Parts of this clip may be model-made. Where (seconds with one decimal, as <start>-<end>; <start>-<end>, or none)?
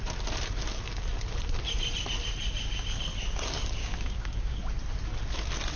3.8-4.6